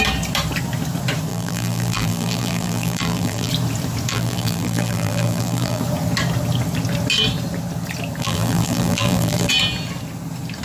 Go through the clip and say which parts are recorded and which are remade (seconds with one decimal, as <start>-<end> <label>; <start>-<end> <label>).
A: 0.0-1.3 recorded; 1.3-3.5 remade; 3.5-4.1 recorded; 4.1-5.8 remade; 5.8-8.2 recorded; 8.2-9.5 remade; 9.5-10.6 recorded